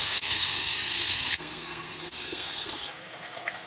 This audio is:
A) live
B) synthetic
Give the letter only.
B